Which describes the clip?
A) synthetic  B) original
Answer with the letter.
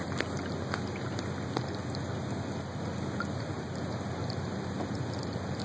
B